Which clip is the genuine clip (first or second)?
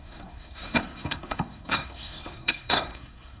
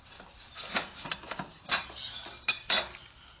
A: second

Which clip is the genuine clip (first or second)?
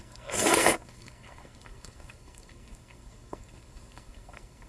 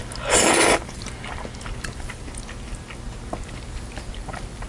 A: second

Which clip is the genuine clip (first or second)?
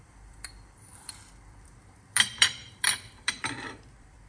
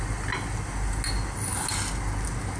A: second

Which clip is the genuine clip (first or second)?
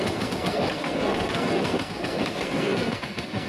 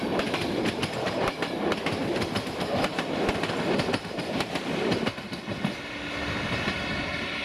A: second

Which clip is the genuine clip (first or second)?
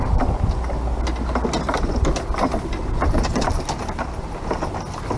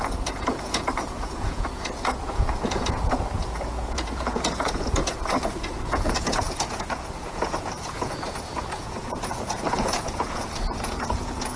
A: first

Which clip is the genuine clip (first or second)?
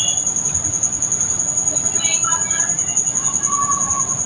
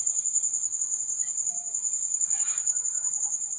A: first